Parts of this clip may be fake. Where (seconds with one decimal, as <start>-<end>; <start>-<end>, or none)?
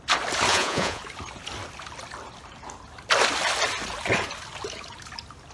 0.5-1.0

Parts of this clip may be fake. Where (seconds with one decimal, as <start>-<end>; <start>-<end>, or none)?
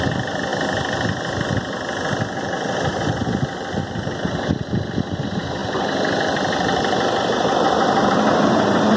none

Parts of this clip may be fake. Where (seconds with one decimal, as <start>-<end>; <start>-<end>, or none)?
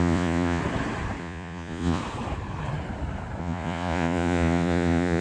0.0-0.6; 1.2-2.0; 3.4-5.2